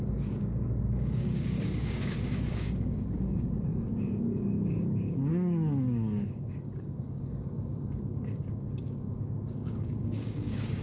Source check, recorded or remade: remade